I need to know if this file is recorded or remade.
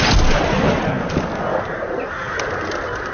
recorded